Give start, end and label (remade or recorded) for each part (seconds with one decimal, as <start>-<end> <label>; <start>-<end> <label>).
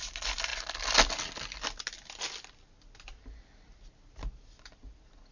0.0-5.3 recorded